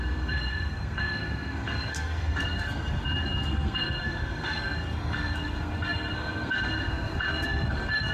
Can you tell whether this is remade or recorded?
remade